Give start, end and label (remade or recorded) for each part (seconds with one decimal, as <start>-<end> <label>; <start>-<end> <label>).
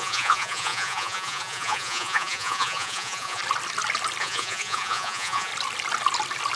0.0-3.4 remade; 3.4-4.2 recorded; 4.2-5.5 remade; 5.5-6.6 recorded